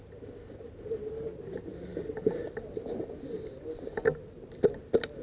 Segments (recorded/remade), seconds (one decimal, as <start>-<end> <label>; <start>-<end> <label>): 0.0-5.2 recorded